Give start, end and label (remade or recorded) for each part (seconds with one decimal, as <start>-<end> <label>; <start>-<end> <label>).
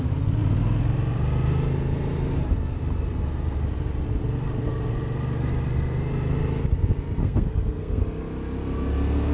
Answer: 0.0-7.2 recorded; 7.2-8.0 remade; 8.0-9.3 recorded